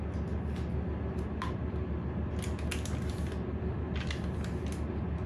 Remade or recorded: recorded